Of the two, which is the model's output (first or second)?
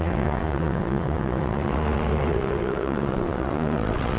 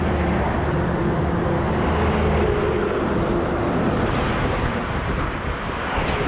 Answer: first